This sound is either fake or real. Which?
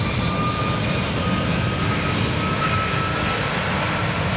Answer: real